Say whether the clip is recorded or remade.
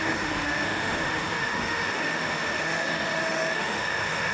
remade